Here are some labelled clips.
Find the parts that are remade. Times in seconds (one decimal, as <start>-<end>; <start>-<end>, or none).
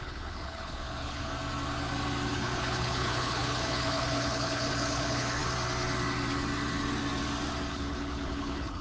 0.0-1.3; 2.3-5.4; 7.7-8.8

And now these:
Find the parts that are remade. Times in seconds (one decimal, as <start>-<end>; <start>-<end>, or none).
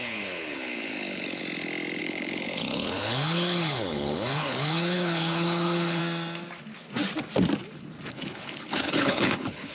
0.0-1.4; 2.0-6.0; 8.1-9.7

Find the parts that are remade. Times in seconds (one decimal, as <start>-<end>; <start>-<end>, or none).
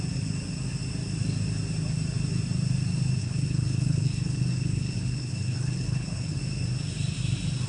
3.2-6.4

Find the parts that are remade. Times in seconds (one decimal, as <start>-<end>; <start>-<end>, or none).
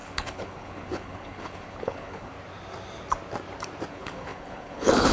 0.0-2.3; 3.9-5.1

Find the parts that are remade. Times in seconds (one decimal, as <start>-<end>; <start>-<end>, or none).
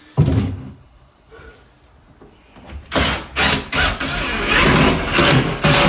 0.4-1.3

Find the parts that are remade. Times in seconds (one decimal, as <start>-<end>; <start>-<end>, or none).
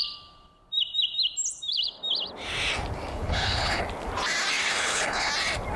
3.1-3.8; 4.7-5.3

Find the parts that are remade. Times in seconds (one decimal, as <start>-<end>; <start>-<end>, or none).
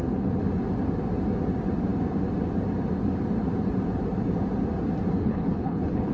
5.2-6.1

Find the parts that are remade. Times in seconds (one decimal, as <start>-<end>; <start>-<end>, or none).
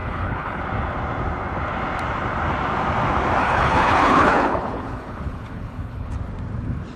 0.0-0.6; 3.4-6.1